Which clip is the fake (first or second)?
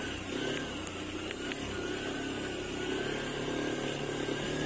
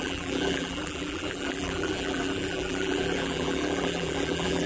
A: second